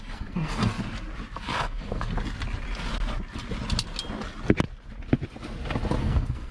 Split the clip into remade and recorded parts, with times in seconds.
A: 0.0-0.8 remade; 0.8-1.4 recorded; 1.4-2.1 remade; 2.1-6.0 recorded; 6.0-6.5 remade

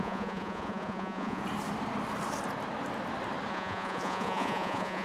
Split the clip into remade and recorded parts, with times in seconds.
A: 0.0-1.4 remade; 1.4-3.5 recorded; 3.5-5.0 remade

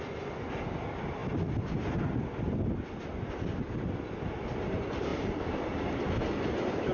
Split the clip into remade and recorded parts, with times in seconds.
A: 0.0-5.1 recorded; 5.1-6.0 remade; 6.0-6.9 recorded

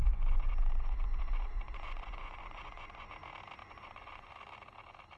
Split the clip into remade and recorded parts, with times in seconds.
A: 0.0-3.1 remade; 3.1-3.6 recorded; 3.6-4.3 remade; 4.3-5.2 recorded

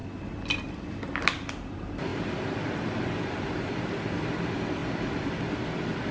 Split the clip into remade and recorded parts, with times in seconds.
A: 0.0-6.1 recorded

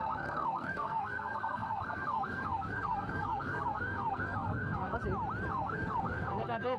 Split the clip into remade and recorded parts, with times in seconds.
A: 0.0-5.0 remade; 5.0-5.5 recorded; 5.5-6.8 remade

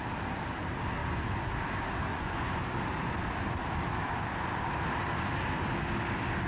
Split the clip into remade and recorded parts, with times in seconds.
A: 0.0-2.1 recorded; 2.1-2.6 remade; 2.6-6.5 recorded